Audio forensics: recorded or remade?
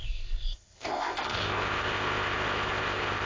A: remade